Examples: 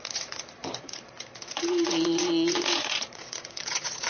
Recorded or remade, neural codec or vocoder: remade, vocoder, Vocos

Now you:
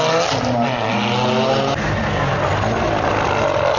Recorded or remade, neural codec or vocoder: recorded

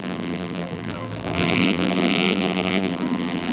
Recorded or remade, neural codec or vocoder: remade, vocoder, BigVGAN v2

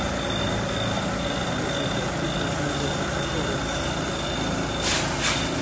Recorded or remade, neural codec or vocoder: recorded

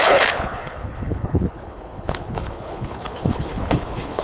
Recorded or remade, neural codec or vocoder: remade, codec, HILCodec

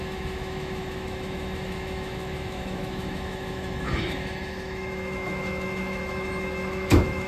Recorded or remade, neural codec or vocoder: remade, autoencoder, DAC-VAE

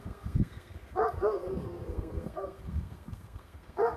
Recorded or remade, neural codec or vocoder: remade, codec, SNAC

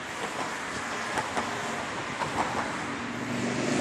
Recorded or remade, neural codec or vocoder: recorded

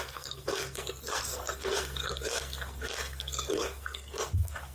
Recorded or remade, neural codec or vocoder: remade, codec, SNAC